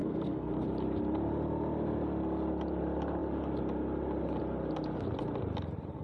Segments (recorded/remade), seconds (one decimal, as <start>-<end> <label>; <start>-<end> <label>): 0.0-0.5 remade; 0.5-6.0 recorded